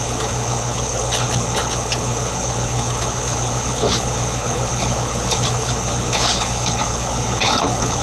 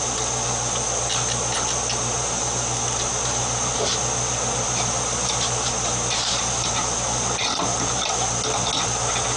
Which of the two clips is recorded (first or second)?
second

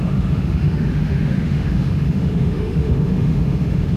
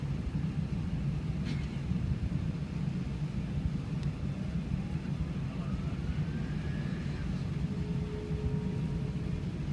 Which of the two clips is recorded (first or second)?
second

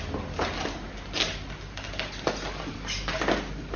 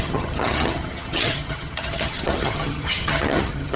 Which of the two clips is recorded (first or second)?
first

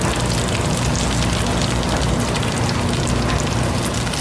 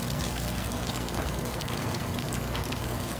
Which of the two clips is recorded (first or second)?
first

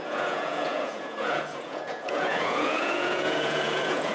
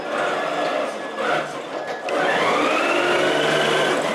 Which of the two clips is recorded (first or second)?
second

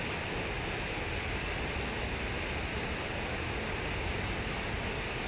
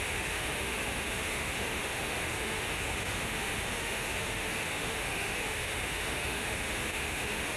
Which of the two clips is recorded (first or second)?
first